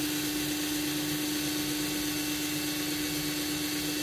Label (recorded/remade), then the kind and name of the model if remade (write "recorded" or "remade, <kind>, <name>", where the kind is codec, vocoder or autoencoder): recorded